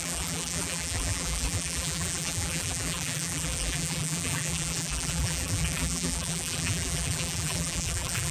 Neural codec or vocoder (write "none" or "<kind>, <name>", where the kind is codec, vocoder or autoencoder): vocoder, BigVGAN v2